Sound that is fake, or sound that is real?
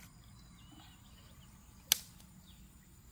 real